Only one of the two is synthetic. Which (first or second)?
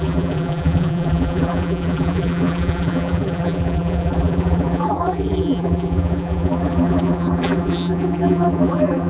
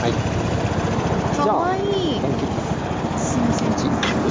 first